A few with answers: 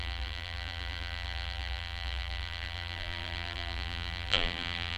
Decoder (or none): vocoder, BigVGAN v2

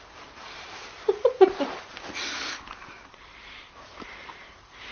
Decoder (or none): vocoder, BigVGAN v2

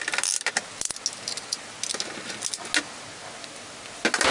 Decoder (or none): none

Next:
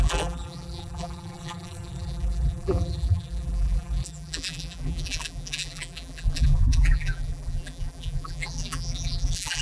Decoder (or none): vocoder, BigVGAN v2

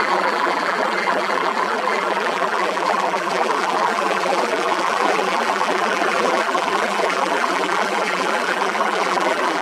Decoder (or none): vocoder, BigVGAN v2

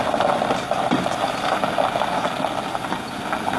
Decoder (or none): none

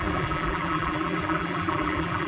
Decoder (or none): vocoder, BigVGAN v2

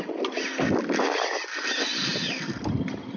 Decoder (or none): none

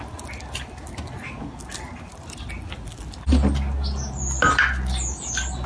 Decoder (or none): none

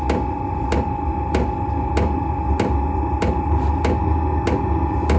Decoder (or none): none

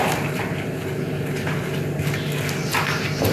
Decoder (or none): none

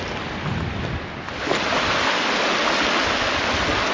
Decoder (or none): none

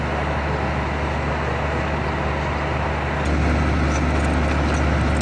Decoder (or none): none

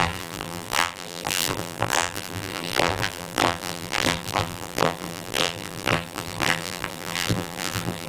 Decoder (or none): vocoder, BigVGAN v2